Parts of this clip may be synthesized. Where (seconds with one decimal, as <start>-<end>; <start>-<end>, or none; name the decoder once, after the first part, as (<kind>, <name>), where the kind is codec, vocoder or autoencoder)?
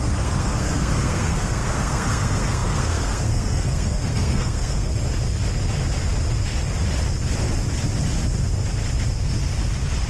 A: 0.0-4.9 (codec, SNAC)